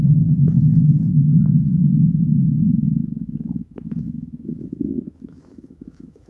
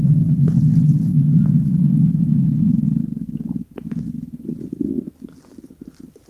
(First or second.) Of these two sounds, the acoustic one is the second